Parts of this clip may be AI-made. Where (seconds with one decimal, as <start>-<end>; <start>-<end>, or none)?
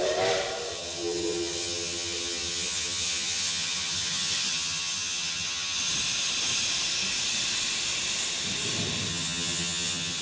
0.7-5.9; 9.1-10.2